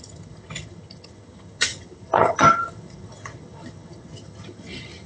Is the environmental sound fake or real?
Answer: fake